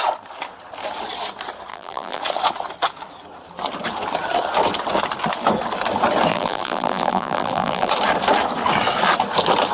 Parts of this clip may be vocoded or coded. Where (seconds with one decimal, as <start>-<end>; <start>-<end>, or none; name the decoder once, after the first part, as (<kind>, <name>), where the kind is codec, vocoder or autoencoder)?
1.7-2.2 (vocoder, BigVGAN v2); 6.3-7.9